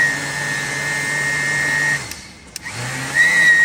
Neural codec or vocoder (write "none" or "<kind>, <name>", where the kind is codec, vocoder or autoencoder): none